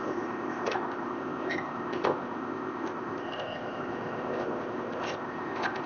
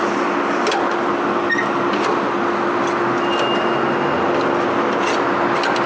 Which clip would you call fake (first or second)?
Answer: first